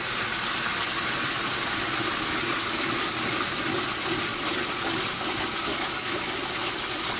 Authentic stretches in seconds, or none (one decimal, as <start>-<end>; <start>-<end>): 0.0-5.7; 6.3-7.2